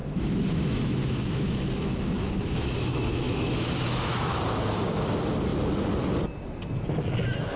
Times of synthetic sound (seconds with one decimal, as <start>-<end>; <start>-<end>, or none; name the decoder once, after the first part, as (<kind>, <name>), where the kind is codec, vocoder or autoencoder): 0.0-4.4 (autoencoder, DAC-VAE)